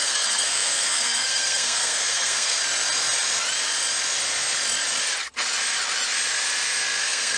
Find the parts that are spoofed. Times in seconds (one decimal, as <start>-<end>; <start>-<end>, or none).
0.0-2.6; 7.0-7.4